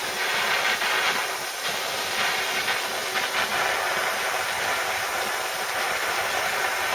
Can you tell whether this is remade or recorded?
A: recorded